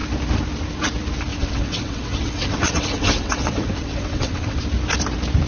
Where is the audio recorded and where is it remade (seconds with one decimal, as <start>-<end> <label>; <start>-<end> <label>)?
0.0-1.3 recorded; 1.3-4.6 remade; 4.6-5.5 recorded